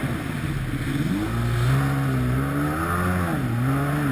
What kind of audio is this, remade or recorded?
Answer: recorded